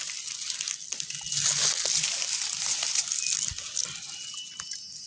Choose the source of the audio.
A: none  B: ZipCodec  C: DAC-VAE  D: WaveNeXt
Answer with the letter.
A